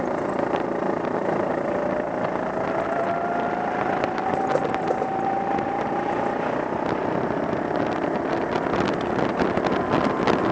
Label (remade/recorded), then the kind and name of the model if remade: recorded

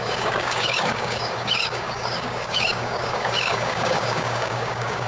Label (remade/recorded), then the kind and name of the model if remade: remade, codec, DAC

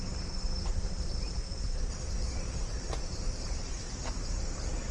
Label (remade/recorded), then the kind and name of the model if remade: remade, vocoder, BigVGAN v2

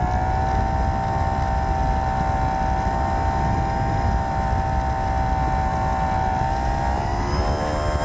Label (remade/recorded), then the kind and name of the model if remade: recorded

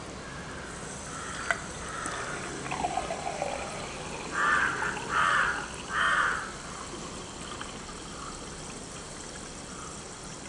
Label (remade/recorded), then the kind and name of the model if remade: recorded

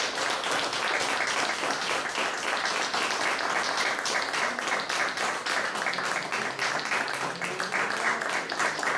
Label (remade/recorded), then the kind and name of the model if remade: recorded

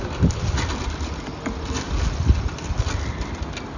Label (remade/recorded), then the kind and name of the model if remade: recorded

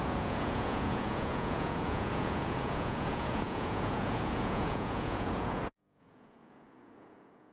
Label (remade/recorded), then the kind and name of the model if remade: remade, vocoder, Vocos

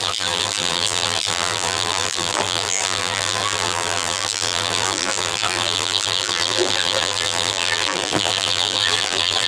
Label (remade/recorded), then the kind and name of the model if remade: remade, vocoder, BigVGAN v2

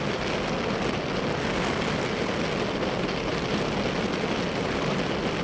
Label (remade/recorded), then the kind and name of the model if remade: recorded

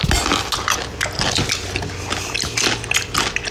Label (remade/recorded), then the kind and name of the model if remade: recorded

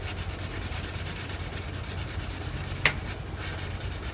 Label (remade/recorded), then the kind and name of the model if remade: recorded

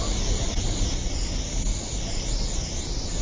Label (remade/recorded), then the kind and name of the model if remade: recorded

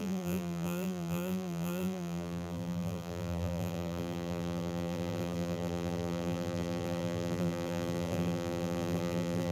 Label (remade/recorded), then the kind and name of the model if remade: remade, vocoder, BigVGAN v2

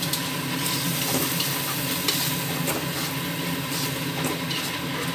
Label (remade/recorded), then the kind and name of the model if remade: recorded